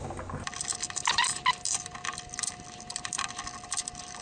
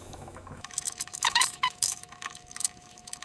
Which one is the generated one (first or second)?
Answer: second